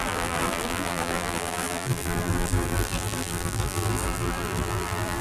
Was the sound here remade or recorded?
remade